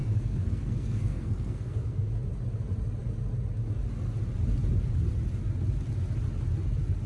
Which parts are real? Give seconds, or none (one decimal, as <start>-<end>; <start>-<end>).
2.1-7.1